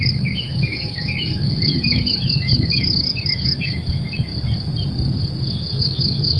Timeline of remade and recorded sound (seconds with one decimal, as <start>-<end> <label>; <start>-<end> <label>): 0.0-4.3 remade; 4.3-5.8 recorded; 5.8-6.4 remade